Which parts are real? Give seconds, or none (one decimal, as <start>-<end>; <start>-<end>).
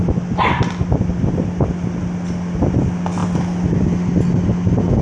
0.0-5.0